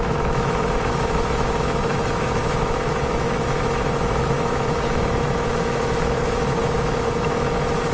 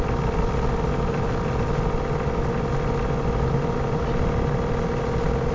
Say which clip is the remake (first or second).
first